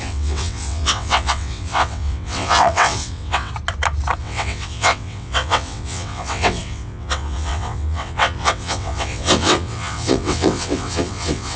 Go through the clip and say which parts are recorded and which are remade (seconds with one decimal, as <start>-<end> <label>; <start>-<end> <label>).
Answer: 0.0-3.5 remade; 3.5-4.2 recorded; 4.2-11.6 remade